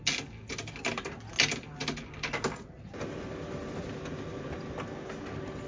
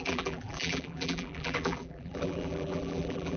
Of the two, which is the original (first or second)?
first